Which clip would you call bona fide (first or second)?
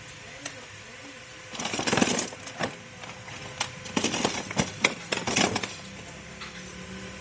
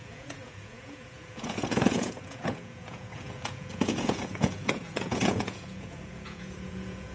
first